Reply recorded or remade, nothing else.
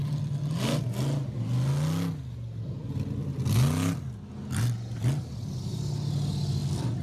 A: recorded